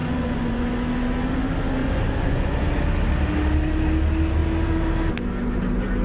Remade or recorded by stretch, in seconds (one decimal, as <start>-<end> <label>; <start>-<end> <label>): 0.0-0.7 remade; 0.7-1.8 recorded; 1.8-2.7 remade; 2.7-6.0 recorded